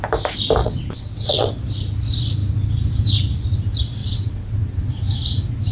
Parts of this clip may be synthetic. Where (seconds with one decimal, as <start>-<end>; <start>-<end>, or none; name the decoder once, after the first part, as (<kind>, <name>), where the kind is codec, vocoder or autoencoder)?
0.6-1.5 (vocoder, WaveNeXt); 4.0-4.9